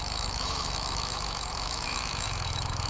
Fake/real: fake